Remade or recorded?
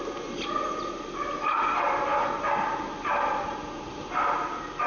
recorded